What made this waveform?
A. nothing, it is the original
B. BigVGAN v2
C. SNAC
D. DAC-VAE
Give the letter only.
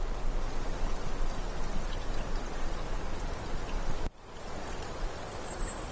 A